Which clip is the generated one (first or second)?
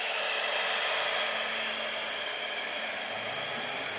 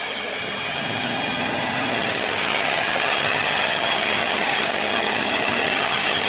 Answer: second